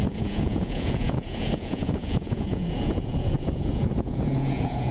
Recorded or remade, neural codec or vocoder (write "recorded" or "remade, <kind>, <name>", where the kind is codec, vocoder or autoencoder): remade, vocoder, Vocos